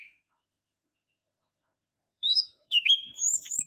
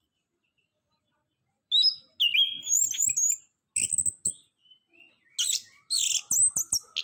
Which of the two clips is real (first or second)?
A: second